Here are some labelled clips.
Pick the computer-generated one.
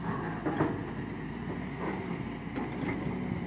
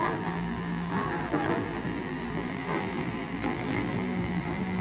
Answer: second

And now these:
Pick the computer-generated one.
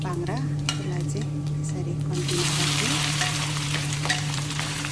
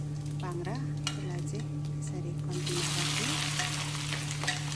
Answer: first